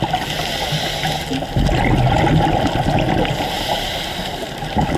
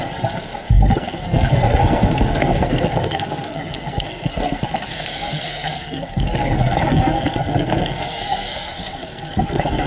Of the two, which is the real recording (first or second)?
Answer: first